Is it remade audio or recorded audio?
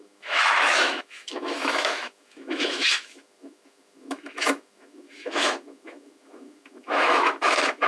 remade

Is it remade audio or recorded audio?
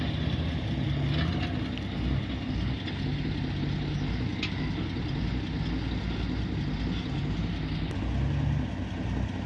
recorded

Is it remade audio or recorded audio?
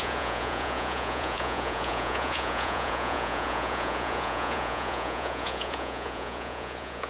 remade